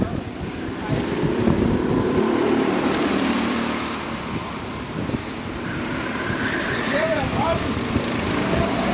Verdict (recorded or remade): remade